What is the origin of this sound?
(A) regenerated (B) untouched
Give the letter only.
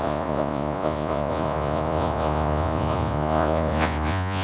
A